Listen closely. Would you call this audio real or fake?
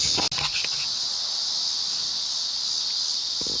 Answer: real